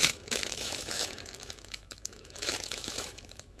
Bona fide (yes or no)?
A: no